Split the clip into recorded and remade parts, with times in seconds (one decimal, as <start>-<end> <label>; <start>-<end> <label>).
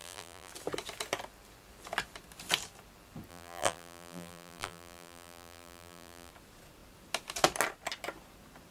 0.0-0.5 remade; 0.5-3.3 recorded; 3.3-6.3 remade; 6.3-8.7 recorded